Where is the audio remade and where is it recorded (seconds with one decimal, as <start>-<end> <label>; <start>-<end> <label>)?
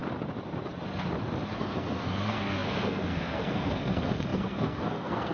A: 0.0-1.5 recorded; 1.5-5.3 remade